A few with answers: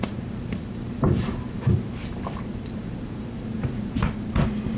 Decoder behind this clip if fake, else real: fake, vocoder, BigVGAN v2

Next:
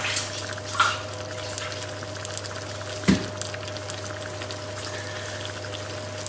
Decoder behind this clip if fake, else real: real